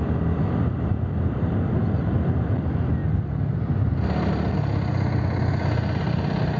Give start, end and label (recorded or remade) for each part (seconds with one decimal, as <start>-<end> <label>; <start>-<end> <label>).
0.0-6.6 recorded

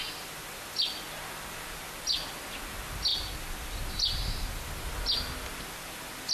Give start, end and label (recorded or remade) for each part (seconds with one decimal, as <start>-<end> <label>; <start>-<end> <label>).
0.0-6.3 recorded

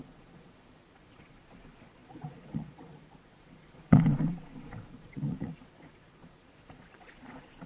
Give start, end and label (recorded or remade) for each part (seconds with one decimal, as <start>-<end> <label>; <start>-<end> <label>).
0.0-7.7 remade

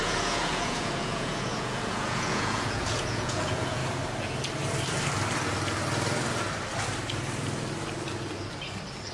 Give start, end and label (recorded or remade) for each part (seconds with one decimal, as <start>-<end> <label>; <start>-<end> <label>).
0.0-3.8 remade; 3.8-9.1 recorded

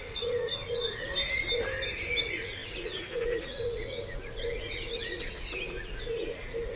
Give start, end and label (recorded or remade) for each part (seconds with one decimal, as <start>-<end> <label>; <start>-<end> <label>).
0.0-1.1 remade; 1.1-2.2 recorded; 2.2-6.8 remade